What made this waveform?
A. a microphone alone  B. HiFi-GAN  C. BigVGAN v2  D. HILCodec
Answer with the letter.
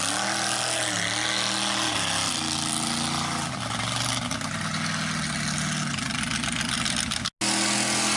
A